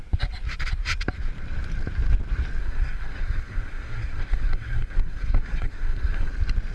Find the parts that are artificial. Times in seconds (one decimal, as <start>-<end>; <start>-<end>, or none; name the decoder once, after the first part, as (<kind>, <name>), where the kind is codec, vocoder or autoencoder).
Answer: 2.6-6.3 (codec, SNAC)